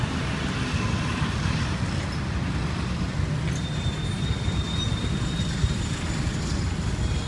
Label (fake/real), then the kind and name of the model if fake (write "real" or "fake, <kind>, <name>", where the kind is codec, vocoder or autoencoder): real